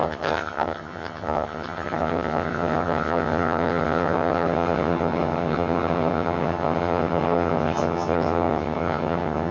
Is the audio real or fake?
fake